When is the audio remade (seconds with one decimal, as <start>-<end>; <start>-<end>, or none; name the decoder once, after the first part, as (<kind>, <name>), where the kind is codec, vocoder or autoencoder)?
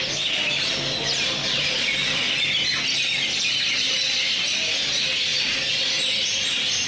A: 1.4-2.3 (vocoder, BigVGAN v2); 5.3-5.8